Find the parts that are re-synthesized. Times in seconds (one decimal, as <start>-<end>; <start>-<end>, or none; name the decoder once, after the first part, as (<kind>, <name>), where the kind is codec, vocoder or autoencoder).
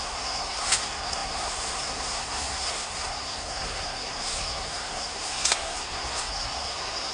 0.0-7.1 (codec, SNAC)